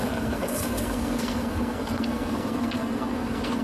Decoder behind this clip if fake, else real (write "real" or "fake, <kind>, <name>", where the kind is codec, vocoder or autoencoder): fake, codec, SNAC